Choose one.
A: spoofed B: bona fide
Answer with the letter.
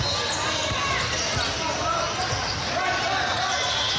B